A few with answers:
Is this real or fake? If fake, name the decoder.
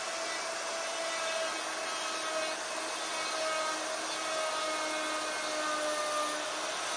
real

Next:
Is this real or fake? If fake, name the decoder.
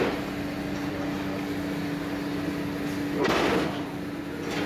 real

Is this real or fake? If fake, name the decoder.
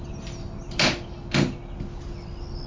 real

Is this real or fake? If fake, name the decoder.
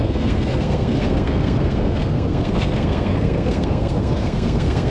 fake, codec, SNAC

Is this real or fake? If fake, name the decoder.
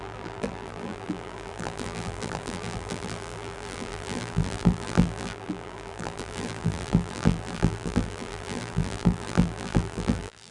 fake, vocoder, BigVGAN v2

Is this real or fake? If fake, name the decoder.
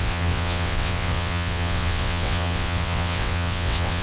fake, vocoder, WaveNeXt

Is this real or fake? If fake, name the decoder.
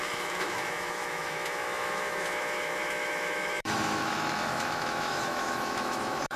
fake, autoencoder, DAC-VAE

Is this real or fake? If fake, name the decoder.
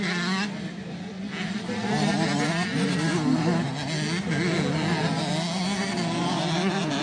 real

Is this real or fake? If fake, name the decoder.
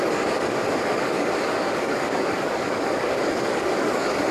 fake, codec, DAC